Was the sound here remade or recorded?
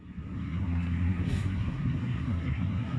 remade